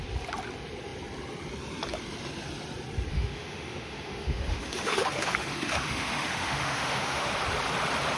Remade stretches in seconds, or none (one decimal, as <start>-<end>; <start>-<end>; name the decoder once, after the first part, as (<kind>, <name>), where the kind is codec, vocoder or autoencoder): 3.1-7.3 (autoencoder, DAC-VAE)

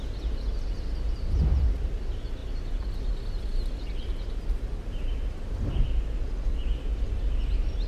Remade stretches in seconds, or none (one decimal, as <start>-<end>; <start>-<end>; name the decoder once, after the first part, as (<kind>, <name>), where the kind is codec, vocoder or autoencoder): none

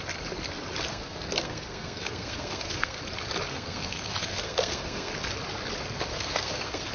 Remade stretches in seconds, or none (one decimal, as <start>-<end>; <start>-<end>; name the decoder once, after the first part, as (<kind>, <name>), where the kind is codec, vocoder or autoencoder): 0.9-3.0 (codec, SNAC); 3.5-5.1; 6.1-6.9

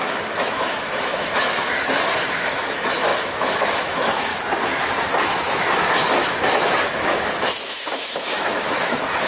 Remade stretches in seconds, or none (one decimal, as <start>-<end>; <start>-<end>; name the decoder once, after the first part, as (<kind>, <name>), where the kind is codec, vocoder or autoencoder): 0.0-4.3 (autoencoder, DAC-VAE); 5.0-9.3

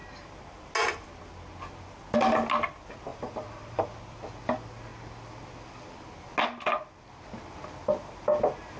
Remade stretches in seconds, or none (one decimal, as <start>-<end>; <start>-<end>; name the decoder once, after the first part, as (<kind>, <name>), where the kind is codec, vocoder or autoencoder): 3.1-3.8 (vocoder, BigVGAN v2)